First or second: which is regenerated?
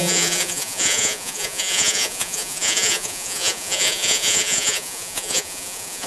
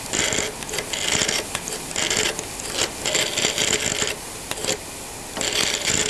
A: first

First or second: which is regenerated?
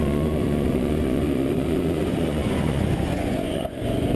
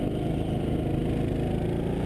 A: first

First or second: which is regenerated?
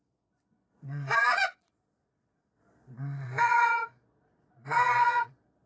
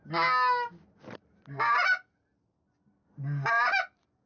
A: first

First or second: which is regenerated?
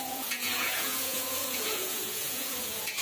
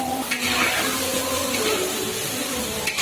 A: first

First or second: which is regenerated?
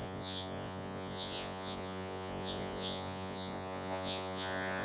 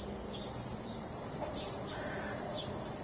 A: first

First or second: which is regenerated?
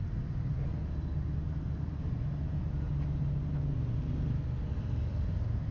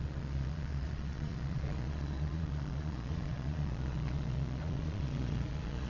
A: second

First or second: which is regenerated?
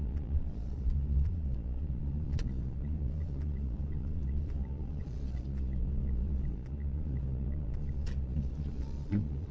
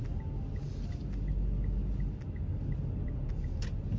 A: first